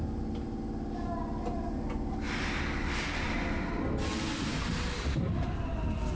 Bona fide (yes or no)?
yes